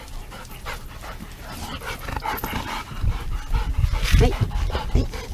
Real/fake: fake